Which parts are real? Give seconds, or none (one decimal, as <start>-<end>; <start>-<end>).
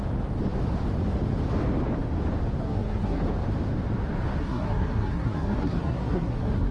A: 0.0-2.6; 3.2-4.4